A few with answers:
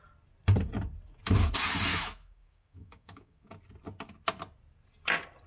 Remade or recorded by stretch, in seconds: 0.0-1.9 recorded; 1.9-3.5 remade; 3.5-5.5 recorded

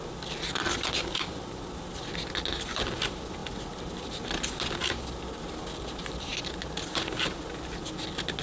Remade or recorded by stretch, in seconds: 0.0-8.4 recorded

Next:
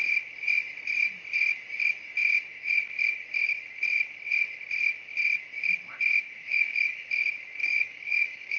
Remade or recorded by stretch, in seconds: 0.0-6.4 recorded; 6.4-7.1 remade; 7.1-7.6 recorded; 7.6-8.6 remade